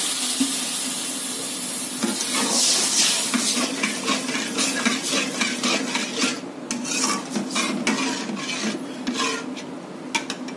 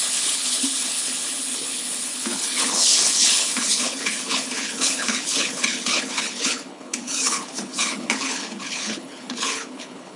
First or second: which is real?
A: first